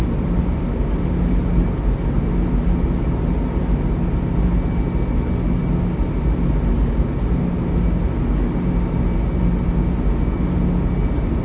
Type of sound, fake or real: real